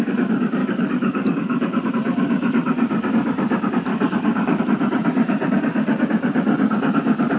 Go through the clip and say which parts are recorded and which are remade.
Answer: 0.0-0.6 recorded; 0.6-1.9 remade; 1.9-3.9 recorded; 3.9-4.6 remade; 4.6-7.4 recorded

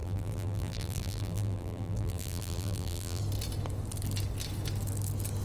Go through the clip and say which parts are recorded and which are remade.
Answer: 0.0-3.2 remade; 3.2-5.4 recorded

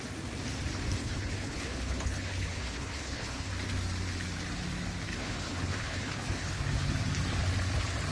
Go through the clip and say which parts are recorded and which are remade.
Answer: 0.0-1.0 recorded; 1.0-3.5 remade; 3.5-5.1 recorded; 5.1-6.6 remade; 6.6-8.1 recorded

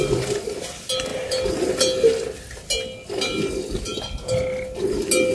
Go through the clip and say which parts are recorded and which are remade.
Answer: 0.0-1.1 recorded; 1.1-1.7 remade; 1.7-5.3 recorded

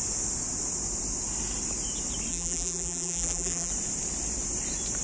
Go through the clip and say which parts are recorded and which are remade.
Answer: 0.0-2.3 recorded; 2.3-3.7 remade; 3.7-5.0 recorded

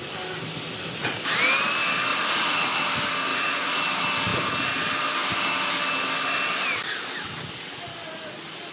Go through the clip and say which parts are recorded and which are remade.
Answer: 0.0-2.1 recorded; 2.1-2.7 remade; 2.7-3.3 recorded; 3.3-3.8 remade; 3.8-8.7 recorded

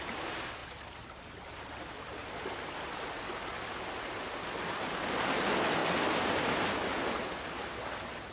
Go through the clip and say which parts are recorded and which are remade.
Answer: 0.0-0.6 recorded; 0.6-3.7 remade; 3.7-5.8 recorded; 5.8-6.8 remade; 6.8-8.3 recorded

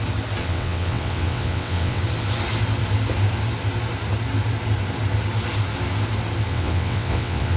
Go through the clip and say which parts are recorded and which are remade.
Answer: 0.0-0.4 recorded; 0.4-2.0 remade; 2.0-6.5 recorded; 6.5-7.6 remade